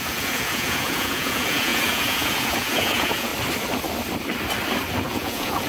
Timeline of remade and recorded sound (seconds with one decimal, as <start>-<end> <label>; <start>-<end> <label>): 0.0-3.3 remade; 3.3-5.0 recorded; 5.0-5.7 remade